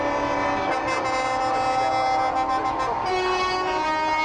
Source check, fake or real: real